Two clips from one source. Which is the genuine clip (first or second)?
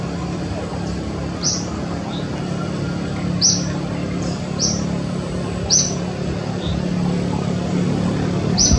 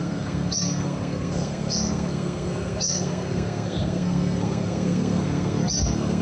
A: first